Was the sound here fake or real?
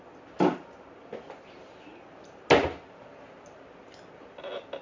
real